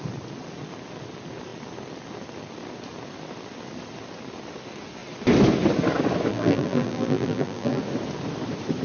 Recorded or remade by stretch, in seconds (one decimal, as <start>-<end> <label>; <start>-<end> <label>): 0.0-6.3 recorded; 6.3-7.8 remade; 7.8-8.8 recorded